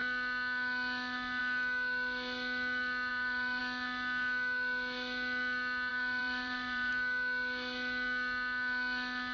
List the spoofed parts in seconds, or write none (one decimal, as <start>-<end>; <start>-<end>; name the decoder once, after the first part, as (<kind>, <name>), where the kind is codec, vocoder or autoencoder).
3.1-3.6 (vocoder, BigVGAN v2); 5.9-6.9